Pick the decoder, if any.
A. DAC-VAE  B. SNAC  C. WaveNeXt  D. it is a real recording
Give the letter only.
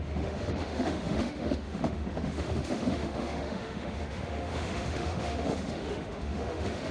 A